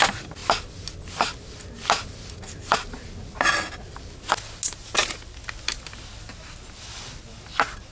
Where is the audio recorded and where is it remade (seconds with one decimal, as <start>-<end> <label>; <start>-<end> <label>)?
0.0-7.9 recorded

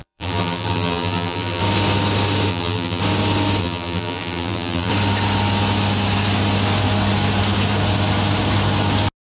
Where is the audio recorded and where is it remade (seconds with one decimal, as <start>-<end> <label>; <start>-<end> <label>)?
0.0-1.6 remade; 1.6-2.5 recorded; 2.5-3.0 remade; 3.0-3.6 recorded; 3.6-4.9 remade; 4.9-9.2 recorded

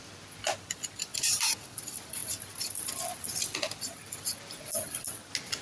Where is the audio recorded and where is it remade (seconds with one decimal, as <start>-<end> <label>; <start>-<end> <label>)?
0.0-1.1 recorded; 1.1-1.8 remade; 1.8-5.6 recorded